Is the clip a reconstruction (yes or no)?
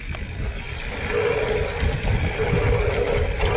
no